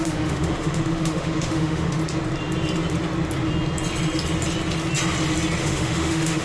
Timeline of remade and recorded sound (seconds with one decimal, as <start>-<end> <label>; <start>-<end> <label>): 0.0-2.0 remade; 2.0-5.6 recorded; 5.6-6.4 remade